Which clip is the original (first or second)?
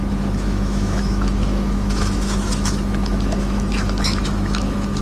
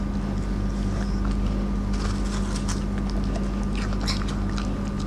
second